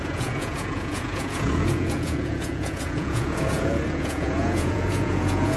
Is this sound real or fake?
fake